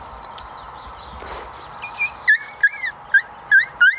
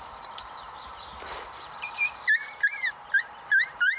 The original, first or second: first